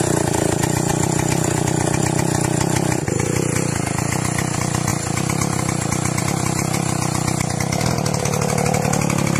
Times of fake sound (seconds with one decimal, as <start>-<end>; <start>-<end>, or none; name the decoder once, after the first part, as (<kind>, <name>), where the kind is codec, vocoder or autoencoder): none